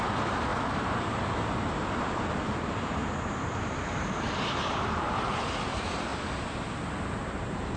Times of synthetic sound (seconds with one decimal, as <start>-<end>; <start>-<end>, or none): 0.0-6.1; 6.9-7.8